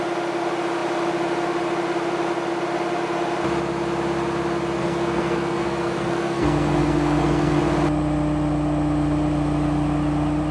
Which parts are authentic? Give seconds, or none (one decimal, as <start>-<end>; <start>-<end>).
0.0-4.8; 7.6-10.5